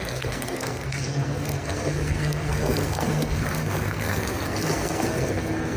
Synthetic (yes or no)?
yes